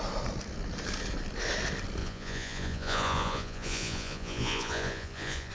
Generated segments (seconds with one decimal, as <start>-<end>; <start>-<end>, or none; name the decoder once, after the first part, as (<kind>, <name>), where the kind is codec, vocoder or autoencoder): 2.0-5.5 (vocoder, Vocos)